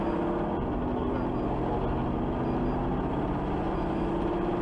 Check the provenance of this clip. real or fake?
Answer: real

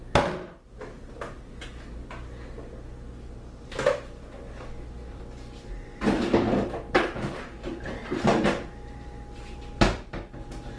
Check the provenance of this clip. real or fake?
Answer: real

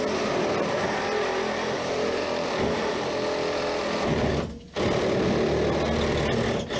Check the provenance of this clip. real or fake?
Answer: real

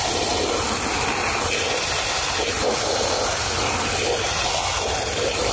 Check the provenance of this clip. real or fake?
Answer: real